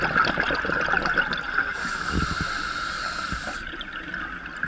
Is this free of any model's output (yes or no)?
yes